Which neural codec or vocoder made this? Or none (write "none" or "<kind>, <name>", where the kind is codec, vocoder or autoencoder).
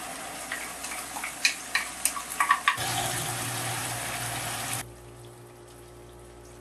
none